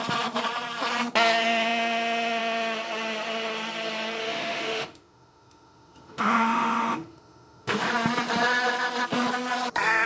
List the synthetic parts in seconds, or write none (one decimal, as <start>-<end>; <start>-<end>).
4.2-7.9